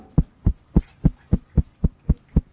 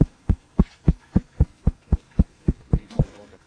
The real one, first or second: first